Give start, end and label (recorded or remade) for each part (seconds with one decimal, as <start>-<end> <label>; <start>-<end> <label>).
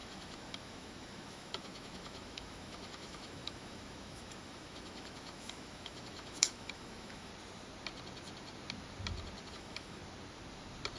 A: 0.0-7.3 remade; 7.3-9.5 recorded; 9.5-10.0 remade; 10.0-11.0 recorded